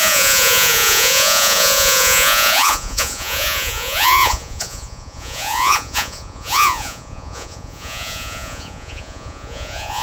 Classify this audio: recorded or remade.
remade